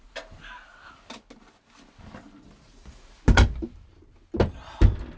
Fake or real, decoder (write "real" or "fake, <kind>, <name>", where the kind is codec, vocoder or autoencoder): real